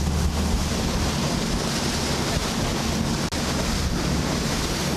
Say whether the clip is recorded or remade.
recorded